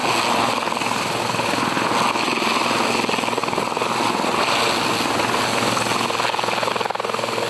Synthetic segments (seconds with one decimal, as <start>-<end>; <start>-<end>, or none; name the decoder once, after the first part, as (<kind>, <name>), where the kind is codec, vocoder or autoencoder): none